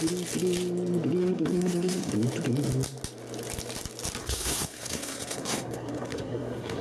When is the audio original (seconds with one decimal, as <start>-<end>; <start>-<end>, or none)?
0.0-1.2; 2.1-4.2

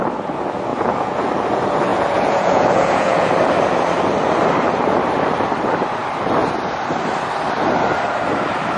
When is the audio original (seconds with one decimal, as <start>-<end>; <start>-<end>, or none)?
0.0-0.7; 1.3-1.9; 3.3-8.8

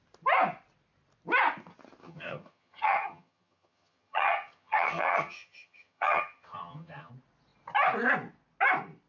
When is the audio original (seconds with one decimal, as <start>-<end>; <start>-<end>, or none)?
0.0-2.0; 7.1-9.1

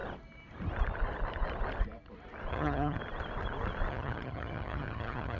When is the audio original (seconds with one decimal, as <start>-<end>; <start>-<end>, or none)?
0.0-2.5; 3.0-3.9

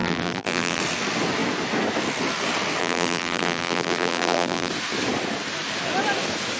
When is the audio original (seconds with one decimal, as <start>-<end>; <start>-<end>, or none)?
0.8-2.8; 4.7-6.6

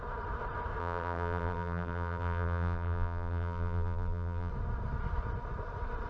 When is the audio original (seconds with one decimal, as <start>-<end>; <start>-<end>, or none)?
0.0-0.8; 4.5-6.1

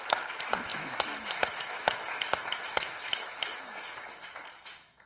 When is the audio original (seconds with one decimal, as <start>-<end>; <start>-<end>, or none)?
none

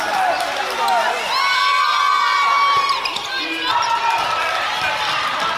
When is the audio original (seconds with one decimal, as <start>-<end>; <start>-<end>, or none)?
0.0-5.6